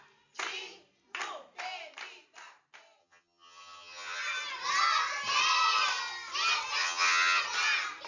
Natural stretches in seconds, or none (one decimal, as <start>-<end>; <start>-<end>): 0.0-3.0; 4.2-6.8; 7.4-8.1

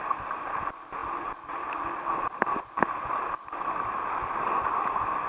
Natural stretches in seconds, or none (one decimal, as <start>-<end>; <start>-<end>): 0.0-5.3